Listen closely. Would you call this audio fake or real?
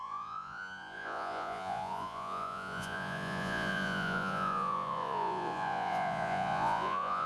fake